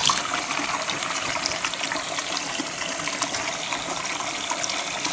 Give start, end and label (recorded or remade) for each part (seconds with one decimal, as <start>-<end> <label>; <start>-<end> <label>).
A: 0.0-5.1 recorded